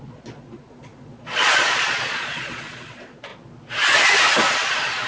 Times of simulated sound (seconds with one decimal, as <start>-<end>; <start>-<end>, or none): 0.0-3.3